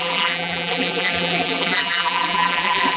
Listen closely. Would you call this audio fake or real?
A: fake